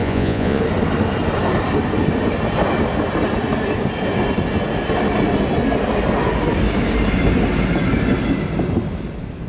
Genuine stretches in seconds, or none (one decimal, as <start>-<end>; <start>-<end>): 0.6-9.5

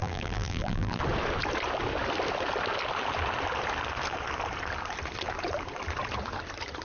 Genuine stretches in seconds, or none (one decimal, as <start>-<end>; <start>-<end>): 1.0-6.8

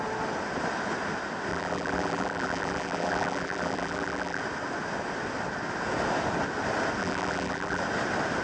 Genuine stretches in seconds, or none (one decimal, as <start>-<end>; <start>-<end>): 0.0-1.5; 4.4-7.0; 7.8-8.4

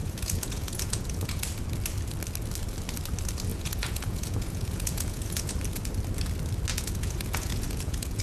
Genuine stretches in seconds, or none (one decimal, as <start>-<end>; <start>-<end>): 1.4-3.5; 5.5-6.7

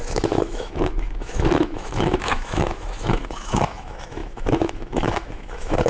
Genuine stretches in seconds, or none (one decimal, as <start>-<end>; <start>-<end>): none

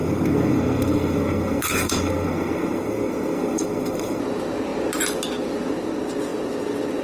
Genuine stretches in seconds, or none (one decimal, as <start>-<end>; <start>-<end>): 4.2-7.0

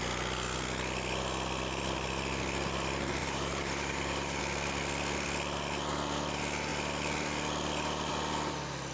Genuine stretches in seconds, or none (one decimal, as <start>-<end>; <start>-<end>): 0.0-3.2; 4.4-8.9

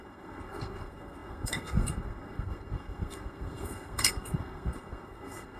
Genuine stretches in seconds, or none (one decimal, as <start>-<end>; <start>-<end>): none